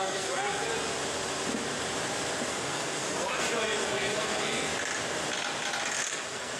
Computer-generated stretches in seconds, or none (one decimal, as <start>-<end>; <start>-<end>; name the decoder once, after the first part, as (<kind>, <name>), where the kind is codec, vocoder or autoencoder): 0.0-0.7 (codec, SNAC); 2.5-4.7; 6.0-6.6